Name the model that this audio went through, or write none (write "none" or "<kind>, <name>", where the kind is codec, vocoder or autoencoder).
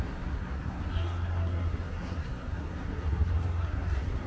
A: codec, SNAC